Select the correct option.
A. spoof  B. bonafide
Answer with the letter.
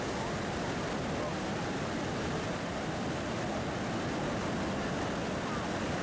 B